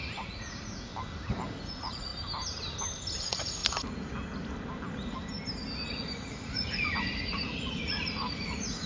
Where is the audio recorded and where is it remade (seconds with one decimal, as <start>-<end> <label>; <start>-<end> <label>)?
0.0-0.9 remade; 0.9-1.7 recorded; 1.7-2.1 remade; 2.1-3.2 recorded; 3.2-3.6 remade; 3.6-5.9 recorded; 5.9-8.9 remade